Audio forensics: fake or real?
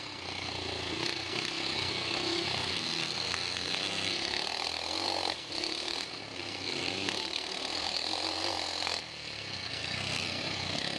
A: fake